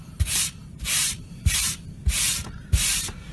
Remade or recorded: remade